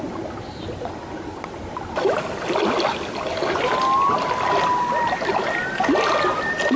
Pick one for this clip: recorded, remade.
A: recorded